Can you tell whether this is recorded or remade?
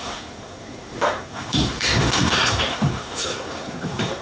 remade